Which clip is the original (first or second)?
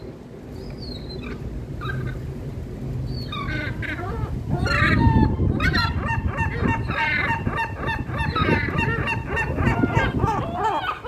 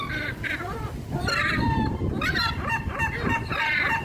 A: first